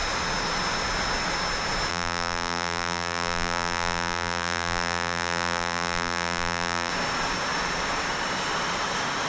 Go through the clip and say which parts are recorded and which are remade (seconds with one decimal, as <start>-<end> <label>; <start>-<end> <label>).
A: 0.0-1.9 recorded; 1.9-6.9 remade; 6.9-9.3 recorded